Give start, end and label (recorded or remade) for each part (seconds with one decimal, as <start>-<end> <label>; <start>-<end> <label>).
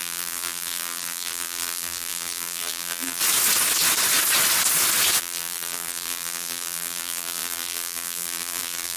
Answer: 0.0-3.2 remade; 3.2-5.2 recorded; 5.2-9.0 remade